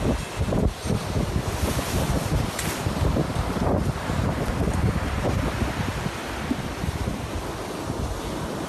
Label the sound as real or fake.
real